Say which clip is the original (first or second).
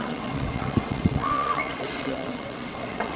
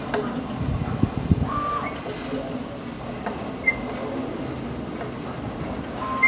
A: second